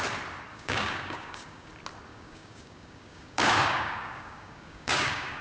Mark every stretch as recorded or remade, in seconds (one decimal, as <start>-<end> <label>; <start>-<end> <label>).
0.0-0.5 recorded; 0.5-1.7 remade; 1.7-2.1 recorded; 2.1-5.4 remade